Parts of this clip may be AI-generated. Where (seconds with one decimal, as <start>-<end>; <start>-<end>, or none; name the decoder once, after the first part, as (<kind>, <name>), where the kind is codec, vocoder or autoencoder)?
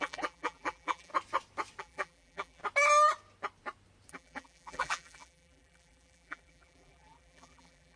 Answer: 0.0-1.1 (vocoder, BigVGAN v2); 1.8-2.6; 4.1-8.0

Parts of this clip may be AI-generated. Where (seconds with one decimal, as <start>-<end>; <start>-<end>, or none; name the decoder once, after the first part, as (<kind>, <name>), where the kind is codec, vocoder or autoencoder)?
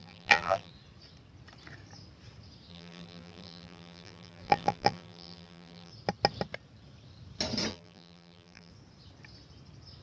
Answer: 0.0-0.7 (vocoder, BigVGAN v2); 2.7-5.9; 7.7-8.7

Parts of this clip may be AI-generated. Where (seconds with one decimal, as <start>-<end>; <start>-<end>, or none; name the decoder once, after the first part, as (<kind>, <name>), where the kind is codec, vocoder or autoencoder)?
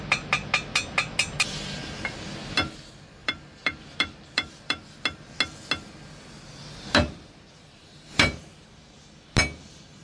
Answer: 3.2-4.8 (vocoder, BigVGAN v2); 6.6-8.4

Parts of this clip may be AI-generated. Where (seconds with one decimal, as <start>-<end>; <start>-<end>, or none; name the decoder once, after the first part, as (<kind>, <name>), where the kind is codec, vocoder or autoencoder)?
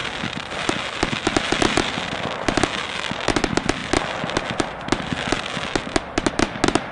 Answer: none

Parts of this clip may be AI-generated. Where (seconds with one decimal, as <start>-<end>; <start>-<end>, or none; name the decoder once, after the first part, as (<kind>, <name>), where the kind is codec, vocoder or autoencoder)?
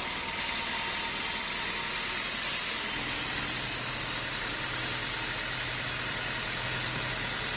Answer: none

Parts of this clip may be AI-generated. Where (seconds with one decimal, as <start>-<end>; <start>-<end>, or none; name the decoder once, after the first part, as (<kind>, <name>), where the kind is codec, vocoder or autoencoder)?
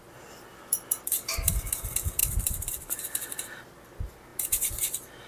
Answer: 0.5-1.5 (vocoder, BigVGAN v2); 2.2-3.0; 4.3-5.3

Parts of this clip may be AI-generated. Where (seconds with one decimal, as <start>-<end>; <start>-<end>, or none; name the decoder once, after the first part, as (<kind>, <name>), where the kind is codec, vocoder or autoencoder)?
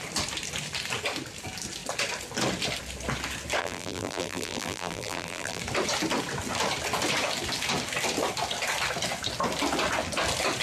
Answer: 3.6-5.6 (vocoder, BigVGAN v2)